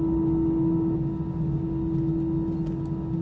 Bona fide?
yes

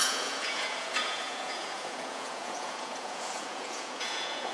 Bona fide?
no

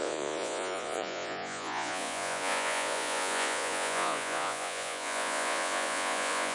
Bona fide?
no